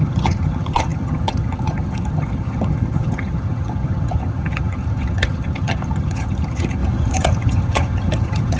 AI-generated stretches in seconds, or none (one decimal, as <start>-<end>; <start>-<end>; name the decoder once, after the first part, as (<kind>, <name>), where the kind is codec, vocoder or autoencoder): 0.0-8.6 (vocoder, HiFi-GAN)